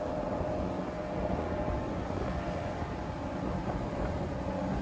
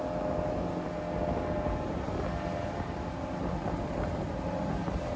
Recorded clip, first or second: second